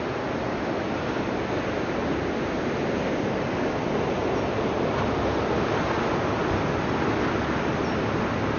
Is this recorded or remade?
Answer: recorded